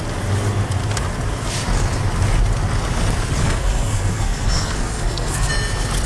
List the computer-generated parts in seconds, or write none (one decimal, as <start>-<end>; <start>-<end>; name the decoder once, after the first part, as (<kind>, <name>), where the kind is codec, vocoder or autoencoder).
3.4-5.5 (codec, SNAC)